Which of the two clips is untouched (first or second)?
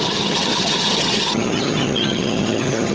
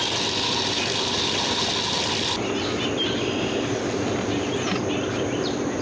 second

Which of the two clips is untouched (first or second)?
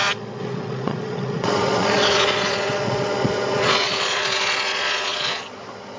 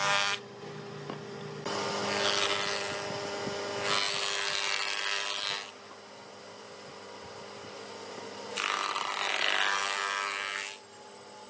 second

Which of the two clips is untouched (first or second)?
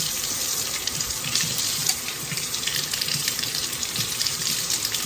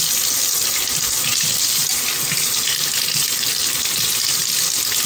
second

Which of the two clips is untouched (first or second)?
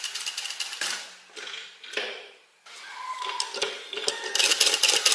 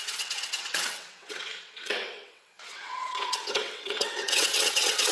first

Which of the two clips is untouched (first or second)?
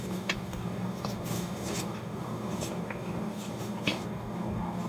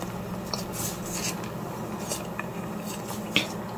second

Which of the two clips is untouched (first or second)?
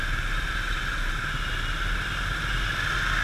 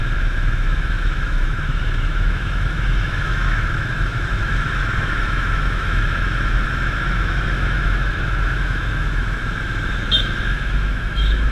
first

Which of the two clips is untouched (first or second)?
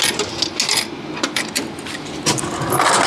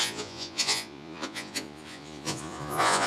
first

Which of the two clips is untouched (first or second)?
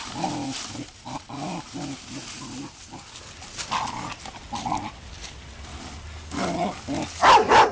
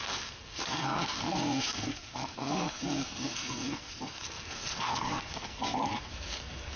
first